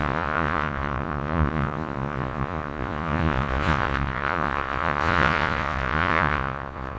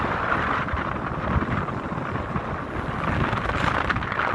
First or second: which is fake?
first